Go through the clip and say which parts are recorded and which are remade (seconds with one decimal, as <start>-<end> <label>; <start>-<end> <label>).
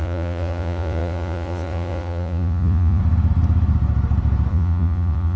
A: 0.0-3.0 remade; 3.0-4.5 recorded; 4.5-5.4 remade